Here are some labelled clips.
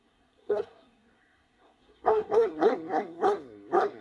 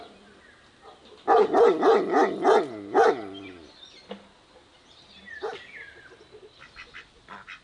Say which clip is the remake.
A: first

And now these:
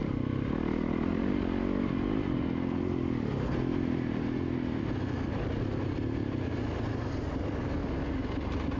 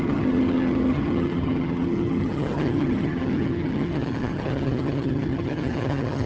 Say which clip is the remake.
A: second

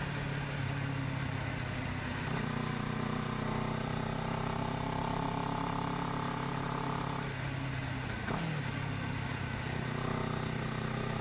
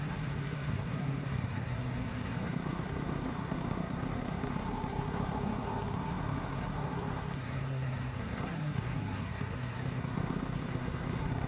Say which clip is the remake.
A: second